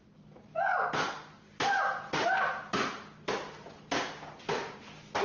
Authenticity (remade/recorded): recorded